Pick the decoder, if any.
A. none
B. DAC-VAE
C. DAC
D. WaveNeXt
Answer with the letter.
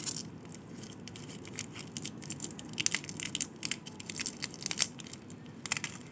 A